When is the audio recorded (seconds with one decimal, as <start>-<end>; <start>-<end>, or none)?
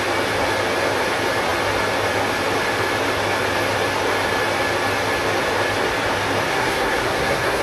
0.0-6.5